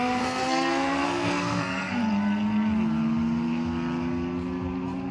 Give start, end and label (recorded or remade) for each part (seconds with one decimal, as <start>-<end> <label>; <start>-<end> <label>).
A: 0.0-2.0 remade; 2.0-5.1 recorded